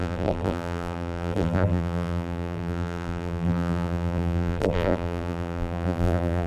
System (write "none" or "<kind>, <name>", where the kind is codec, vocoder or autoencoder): vocoder, BigVGAN v2